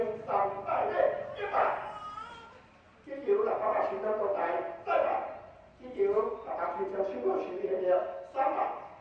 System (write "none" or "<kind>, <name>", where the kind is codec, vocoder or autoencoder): none